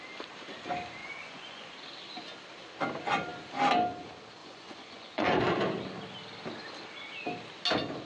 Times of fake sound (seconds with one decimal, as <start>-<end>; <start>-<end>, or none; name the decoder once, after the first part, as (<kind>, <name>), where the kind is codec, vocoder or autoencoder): 1.0-1.7 (vocoder, Vocos); 4.4-5.6